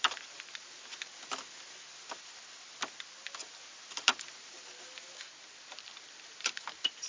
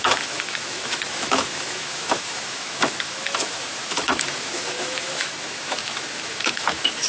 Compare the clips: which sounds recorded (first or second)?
first